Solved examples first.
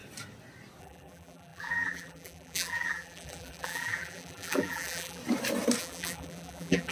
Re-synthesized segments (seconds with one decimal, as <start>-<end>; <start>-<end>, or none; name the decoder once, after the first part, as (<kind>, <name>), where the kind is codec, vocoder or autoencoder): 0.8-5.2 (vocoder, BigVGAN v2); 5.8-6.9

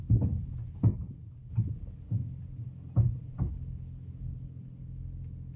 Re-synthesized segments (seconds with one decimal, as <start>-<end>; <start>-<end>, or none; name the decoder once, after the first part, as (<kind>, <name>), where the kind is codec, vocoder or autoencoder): none

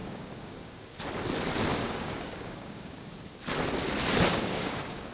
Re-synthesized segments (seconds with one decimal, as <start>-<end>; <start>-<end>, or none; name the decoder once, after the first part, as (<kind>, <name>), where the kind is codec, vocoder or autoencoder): 0.0-1.0 (codec, DAC); 1.7-3.1; 4.3-5.1

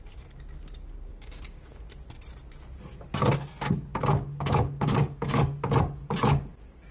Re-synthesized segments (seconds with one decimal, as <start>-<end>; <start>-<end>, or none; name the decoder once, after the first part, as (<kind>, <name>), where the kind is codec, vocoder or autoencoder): 1.1-1.8 (codec, DAC); 3.9-5.4; 6.0-6.9

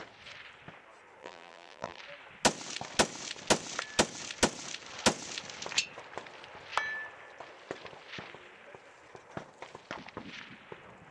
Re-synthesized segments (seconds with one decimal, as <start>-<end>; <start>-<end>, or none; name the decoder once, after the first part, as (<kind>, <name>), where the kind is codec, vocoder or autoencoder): 1.2-2.0 (vocoder, BigVGAN v2)